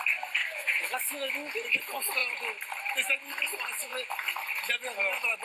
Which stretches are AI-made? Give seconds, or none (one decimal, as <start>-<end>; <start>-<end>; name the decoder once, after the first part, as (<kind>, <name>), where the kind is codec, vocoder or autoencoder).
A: 0.4-1.3 (autoencoder, DAC-VAE)